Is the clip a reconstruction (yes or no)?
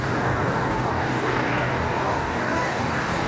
yes